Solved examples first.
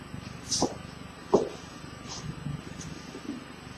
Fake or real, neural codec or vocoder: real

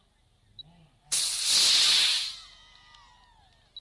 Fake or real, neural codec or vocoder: real